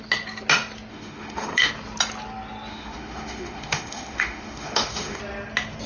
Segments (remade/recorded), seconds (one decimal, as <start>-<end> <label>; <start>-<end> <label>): 0.0-0.9 recorded; 0.9-1.7 remade; 1.7-2.7 recorded; 2.7-5.2 remade; 5.2-5.9 recorded